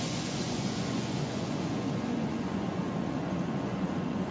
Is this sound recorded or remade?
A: remade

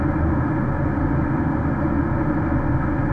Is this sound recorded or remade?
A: recorded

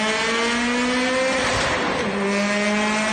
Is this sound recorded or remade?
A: recorded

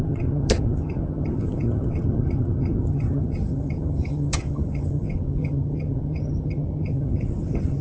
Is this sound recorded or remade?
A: remade